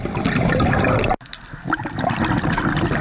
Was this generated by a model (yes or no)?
no